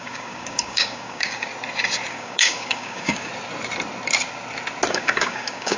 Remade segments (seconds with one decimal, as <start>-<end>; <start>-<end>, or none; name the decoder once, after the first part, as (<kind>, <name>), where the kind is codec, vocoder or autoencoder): 0.0-1.5 (codec, DAC); 2.1-3.3; 4.9-5.8